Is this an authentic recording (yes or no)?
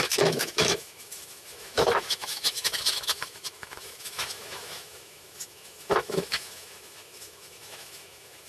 no